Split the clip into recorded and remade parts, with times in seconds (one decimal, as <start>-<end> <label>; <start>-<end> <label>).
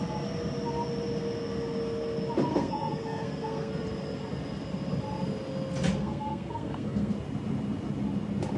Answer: 0.0-2.5 recorded; 2.5-3.7 remade; 3.7-6.0 recorded; 6.0-7.1 remade; 7.1-8.6 recorded